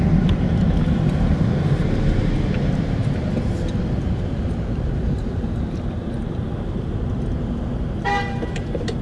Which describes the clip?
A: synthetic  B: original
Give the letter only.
A